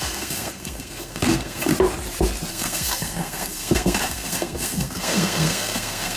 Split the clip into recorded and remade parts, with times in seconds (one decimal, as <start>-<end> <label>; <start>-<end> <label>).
0.0-1.7 remade; 1.7-2.5 recorded; 2.5-6.2 remade